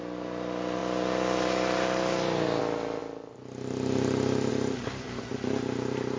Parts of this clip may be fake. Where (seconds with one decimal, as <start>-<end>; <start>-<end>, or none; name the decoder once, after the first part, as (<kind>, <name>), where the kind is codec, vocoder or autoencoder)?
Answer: none